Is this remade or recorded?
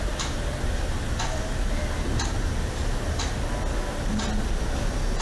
recorded